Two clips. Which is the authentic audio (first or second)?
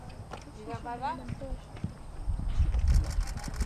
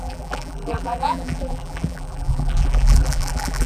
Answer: first